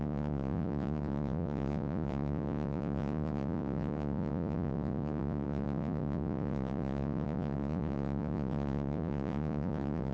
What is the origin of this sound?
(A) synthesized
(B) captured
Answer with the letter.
A